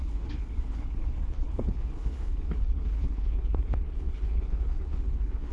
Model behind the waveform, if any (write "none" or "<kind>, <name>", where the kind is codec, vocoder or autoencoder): codec, HILCodec